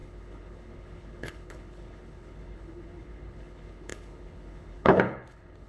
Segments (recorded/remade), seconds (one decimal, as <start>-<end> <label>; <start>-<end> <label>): 0.0-5.7 remade

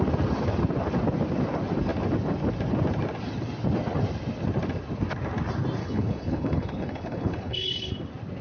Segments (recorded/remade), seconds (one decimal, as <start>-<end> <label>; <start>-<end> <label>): 0.0-5.8 recorded; 5.8-7.9 remade; 7.9-8.4 recorded

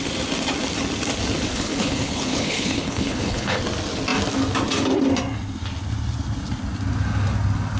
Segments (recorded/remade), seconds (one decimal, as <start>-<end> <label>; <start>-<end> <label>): 0.0-1.5 recorded; 1.5-3.6 remade; 3.6-7.8 recorded